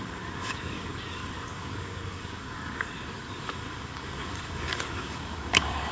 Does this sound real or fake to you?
fake